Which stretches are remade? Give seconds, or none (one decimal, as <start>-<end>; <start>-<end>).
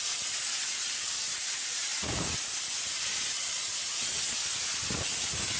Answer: none